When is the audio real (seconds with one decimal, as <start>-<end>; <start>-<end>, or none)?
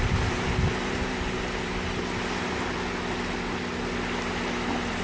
1.7-5.0